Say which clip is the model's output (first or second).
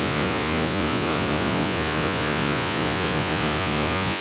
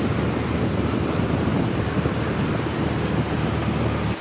first